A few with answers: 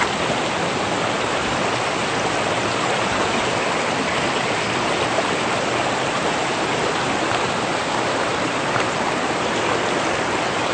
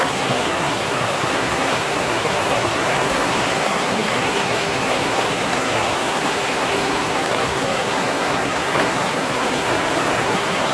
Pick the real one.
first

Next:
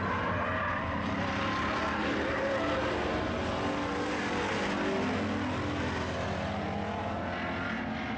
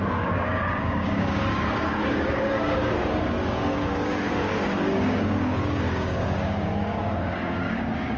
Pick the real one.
first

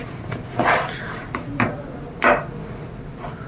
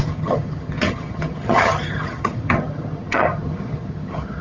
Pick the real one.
first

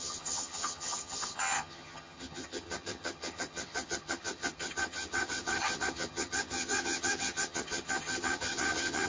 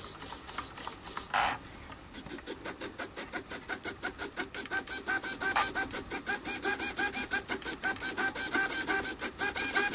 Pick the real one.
second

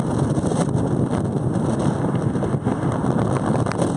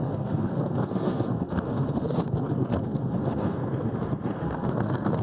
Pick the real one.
first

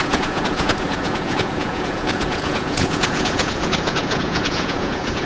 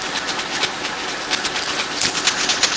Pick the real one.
second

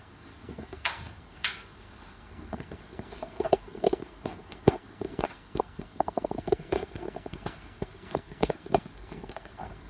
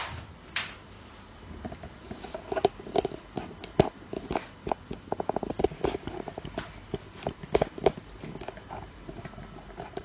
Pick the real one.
second